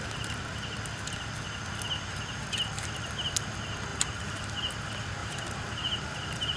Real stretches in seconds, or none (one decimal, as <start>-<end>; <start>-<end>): 0.0-3.9; 4.5-5.2